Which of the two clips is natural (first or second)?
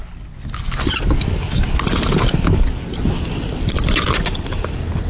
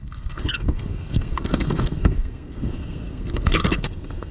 first